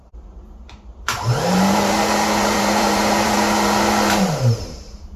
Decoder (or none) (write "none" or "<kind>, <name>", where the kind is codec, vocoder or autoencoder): vocoder, BigVGAN v2